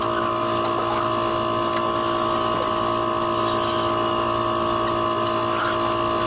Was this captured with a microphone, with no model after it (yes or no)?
yes